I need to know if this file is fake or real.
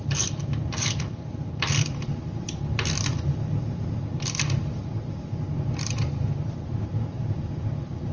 fake